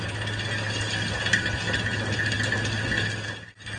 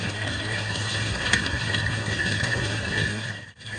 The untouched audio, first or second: first